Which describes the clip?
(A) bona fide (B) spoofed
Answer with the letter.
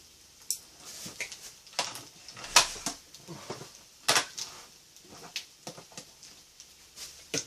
A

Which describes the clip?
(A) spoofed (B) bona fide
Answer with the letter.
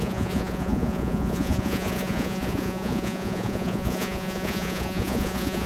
A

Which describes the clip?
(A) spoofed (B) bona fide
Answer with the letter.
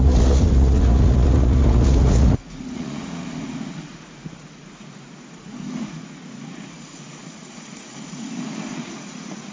A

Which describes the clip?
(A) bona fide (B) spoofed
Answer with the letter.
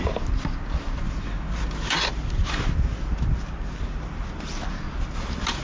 A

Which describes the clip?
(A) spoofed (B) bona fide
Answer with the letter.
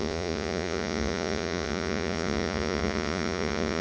A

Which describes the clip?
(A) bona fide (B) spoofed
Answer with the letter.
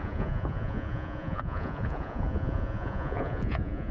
B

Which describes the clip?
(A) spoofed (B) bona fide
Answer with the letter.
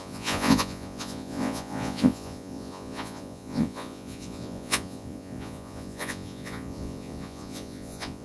A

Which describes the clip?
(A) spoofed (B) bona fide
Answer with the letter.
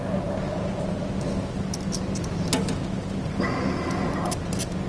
B